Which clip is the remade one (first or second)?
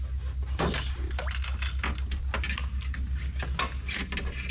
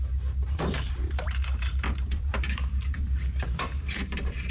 second